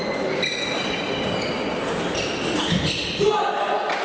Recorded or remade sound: recorded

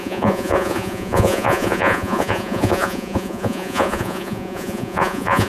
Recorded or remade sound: remade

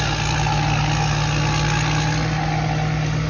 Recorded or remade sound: recorded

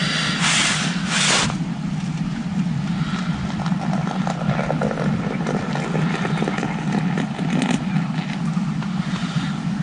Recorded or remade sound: recorded